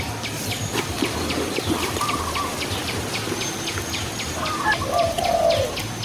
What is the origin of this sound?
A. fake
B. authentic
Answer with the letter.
B